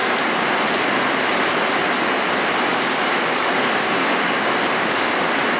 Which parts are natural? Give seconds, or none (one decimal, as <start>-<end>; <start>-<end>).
0.0-2.7; 5.1-5.6